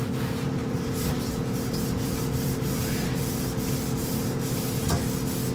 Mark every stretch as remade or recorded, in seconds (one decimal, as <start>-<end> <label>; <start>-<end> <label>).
0.0-0.6 recorded; 0.6-3.2 remade; 3.2-5.5 recorded